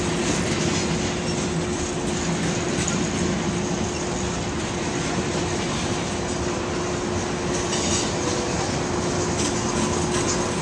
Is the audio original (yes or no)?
yes